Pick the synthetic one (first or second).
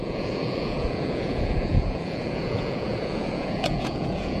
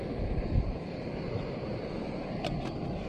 first